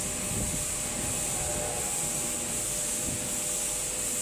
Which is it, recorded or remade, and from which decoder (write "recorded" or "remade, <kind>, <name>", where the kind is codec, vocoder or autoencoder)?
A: recorded